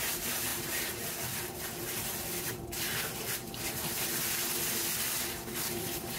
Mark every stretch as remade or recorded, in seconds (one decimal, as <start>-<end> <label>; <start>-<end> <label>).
0.0-6.2 remade

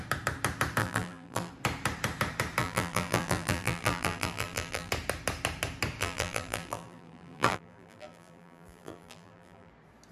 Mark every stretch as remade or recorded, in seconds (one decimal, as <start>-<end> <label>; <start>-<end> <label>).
0.0-0.8 recorded; 0.8-1.5 remade; 1.5-2.6 recorded; 2.6-4.9 remade; 4.9-6.0 recorded; 6.0-9.7 remade; 9.7-10.1 recorded